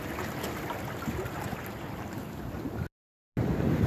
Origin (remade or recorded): recorded